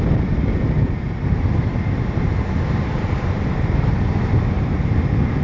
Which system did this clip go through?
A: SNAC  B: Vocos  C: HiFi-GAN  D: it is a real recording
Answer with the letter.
D